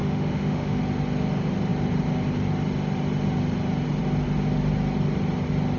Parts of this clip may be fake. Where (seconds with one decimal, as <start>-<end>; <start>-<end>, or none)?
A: 0.0-0.8